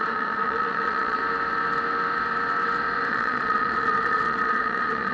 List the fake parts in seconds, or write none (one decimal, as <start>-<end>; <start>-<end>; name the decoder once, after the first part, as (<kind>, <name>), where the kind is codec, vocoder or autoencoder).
0.0-1.2 (vocoder, Vocos); 3.1-5.1